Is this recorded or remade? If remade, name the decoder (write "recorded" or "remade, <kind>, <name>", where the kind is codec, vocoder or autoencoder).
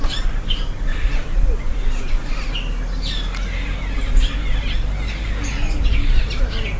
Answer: recorded